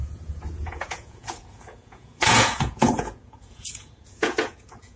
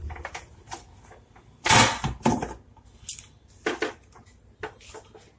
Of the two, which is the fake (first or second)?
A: first